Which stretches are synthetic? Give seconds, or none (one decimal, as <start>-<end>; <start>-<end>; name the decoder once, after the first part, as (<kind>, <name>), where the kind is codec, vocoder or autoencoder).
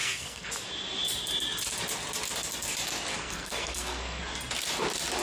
0.0-0.5 (codec, SNAC); 3.1-4.2